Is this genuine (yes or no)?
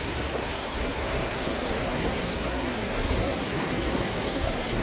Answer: no